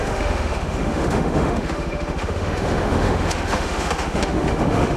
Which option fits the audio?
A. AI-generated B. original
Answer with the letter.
A